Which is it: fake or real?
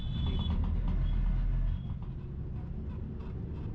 real